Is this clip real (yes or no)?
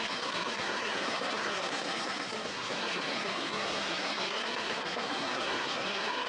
no